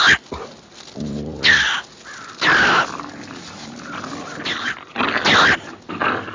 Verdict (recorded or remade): recorded